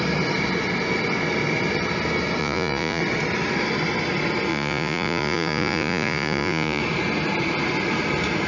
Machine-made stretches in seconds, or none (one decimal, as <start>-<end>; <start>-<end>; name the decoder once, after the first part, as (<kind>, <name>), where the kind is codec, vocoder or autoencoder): 2.4-3.0 (vocoder, Vocos); 4.5-6.8

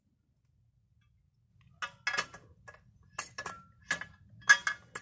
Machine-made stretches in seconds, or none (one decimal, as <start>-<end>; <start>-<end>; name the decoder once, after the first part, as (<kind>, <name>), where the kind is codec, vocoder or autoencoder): none

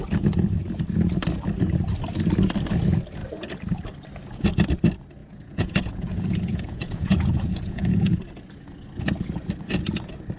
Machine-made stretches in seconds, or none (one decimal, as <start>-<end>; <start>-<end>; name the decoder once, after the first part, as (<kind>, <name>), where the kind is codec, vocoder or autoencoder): 5.2-8.2 (vocoder, Vocos)

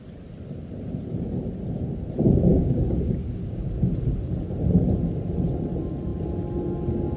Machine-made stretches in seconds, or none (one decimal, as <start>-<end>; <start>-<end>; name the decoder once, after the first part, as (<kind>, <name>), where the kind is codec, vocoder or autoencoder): 2.5-3.8 (codec, DAC)

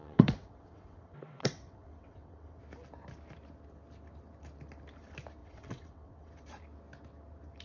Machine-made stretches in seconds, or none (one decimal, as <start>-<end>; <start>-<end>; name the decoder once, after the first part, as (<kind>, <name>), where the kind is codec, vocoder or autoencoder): 0.0-2.6 (vocoder, WaveNeXt); 5.4-6.3

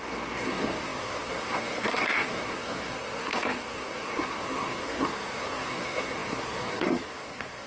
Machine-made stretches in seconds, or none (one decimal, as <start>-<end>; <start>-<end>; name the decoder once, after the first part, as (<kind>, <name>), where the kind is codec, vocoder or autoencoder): 0.0-7.7 (codec, SNAC)

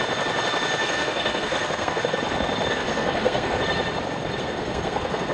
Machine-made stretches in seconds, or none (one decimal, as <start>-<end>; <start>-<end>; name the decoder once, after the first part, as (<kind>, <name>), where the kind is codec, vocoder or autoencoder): 0.8-2.0 (codec, SNAC); 2.7-3.6; 4.4-5.3

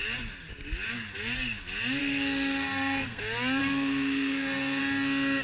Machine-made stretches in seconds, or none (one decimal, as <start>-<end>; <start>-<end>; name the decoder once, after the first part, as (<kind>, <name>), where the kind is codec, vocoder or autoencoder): 2.0-3.2 (codec, SNAC); 3.6-4.8